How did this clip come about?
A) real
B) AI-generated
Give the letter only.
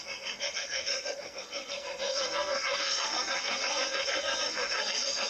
B